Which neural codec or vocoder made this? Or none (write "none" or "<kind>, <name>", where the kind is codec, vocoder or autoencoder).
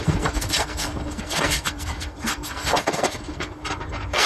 codec, SNAC